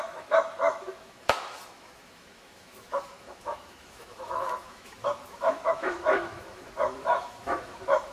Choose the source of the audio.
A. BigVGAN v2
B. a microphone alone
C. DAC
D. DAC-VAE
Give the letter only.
D